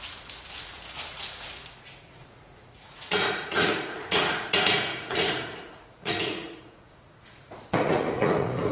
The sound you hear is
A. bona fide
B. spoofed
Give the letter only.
B